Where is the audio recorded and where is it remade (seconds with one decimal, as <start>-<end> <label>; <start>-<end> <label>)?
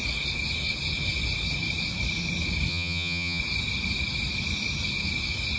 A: 0.0-2.7 recorded; 2.7-3.4 remade; 3.4-5.6 recorded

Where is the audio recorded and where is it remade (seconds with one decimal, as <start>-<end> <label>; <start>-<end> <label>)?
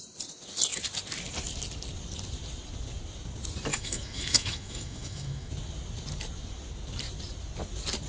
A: 0.0-3.7 recorded; 3.7-5.5 remade; 5.5-8.1 recorded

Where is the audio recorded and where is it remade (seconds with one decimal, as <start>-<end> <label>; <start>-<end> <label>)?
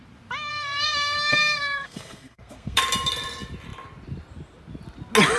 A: 0.0-0.5 recorded; 0.5-2.8 remade; 2.8-5.4 recorded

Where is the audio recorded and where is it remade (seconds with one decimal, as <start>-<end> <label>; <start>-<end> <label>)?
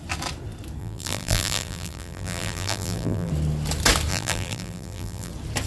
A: 0.0-0.8 recorded; 0.8-3.3 remade; 3.3-4.1 recorded; 4.1-5.3 remade; 5.3-5.7 recorded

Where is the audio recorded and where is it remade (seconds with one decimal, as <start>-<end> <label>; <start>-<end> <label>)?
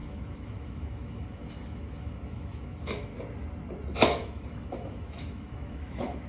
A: 0.0-3.1 remade; 3.1-4.0 recorded; 4.0-6.3 remade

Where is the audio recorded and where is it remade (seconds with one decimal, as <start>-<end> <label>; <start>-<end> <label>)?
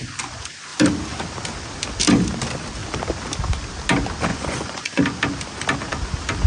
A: 0.0-4.3 recorded; 4.3-5.0 remade; 5.0-6.5 recorded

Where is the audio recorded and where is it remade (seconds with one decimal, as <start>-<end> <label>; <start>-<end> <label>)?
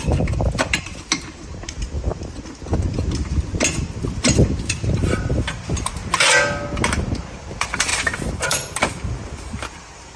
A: 0.0-2.1 remade; 2.1-4.0 recorded; 4.0-6.0 remade; 6.0-7.0 recorded; 7.0-10.2 remade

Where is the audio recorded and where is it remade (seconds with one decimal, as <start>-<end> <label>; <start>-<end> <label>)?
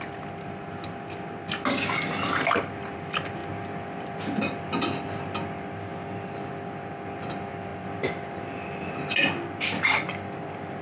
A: 0.0-10.8 recorded